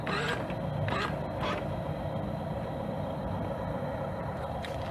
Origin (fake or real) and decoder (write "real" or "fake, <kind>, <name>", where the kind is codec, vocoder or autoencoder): real